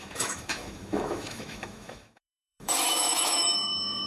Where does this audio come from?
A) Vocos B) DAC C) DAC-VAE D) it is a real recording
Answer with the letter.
C